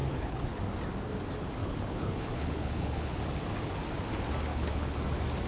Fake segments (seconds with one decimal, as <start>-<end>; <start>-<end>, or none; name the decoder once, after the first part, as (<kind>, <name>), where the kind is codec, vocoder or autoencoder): 0.0-0.6 (codec, HILCodec); 1.6-3.2; 4.5-5.0